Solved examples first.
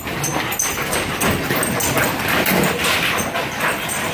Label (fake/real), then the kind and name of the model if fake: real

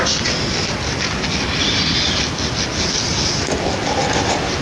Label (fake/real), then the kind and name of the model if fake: real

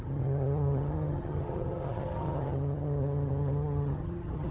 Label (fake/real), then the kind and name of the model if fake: fake, vocoder, HiFi-GAN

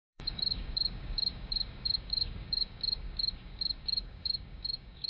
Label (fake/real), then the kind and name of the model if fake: fake, codec, DAC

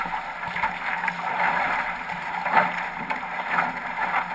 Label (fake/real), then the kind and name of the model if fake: real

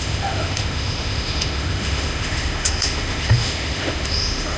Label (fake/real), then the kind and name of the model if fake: fake, autoencoder, DAC-VAE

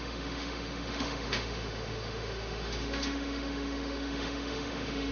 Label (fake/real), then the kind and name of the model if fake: fake, autoencoder, DAC-VAE